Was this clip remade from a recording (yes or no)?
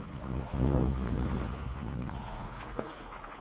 yes